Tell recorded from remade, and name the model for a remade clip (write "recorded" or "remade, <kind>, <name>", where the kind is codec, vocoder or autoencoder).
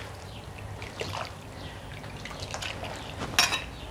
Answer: recorded